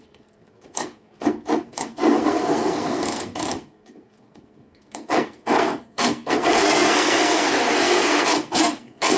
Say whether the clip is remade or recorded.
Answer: remade